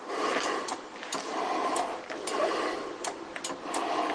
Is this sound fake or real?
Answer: real